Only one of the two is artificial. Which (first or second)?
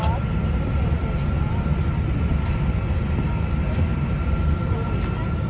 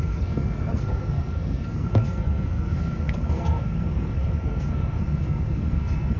second